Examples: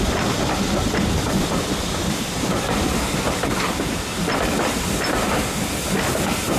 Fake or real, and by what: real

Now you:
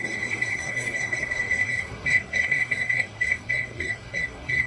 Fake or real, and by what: fake, codec, SNAC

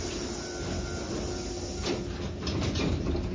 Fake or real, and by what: real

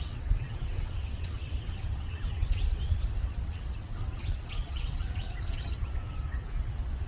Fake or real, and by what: fake, vocoder, WaveNeXt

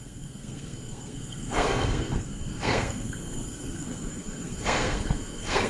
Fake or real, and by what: fake, codec, SNAC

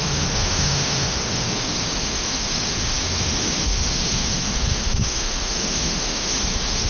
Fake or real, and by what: fake, autoencoder, DAC-VAE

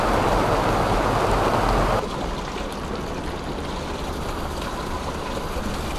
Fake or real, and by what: real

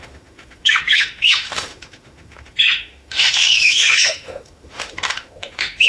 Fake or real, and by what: fake, autoencoder, DAC-VAE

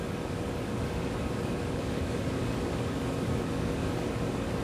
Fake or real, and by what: fake, codec, DAC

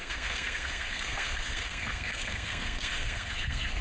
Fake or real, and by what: fake, codec, SNAC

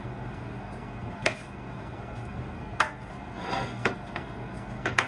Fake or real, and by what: fake, codec, SNAC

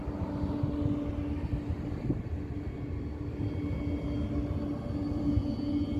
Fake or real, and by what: real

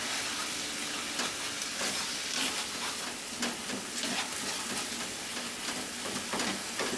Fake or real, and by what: real